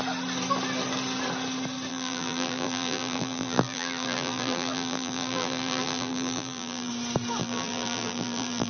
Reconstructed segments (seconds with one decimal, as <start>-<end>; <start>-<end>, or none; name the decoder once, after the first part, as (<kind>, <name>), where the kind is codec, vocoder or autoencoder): 1.9-6.9 (vocoder, BigVGAN v2); 7.4-8.7